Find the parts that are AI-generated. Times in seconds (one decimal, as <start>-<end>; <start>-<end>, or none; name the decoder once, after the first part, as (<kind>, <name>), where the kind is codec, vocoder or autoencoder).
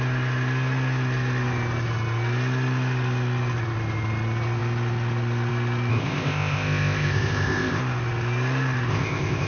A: 5.9-7.8 (codec, ZipCodec); 8.9-9.5